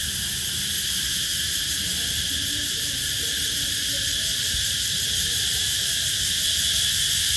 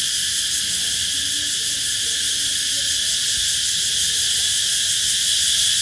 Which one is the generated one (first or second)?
first